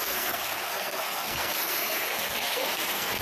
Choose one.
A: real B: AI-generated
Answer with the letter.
B